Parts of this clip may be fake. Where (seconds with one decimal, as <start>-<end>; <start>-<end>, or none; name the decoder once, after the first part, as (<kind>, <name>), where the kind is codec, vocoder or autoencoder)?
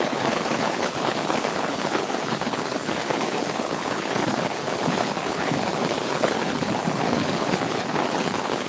0.0-8.7 (codec, HILCodec)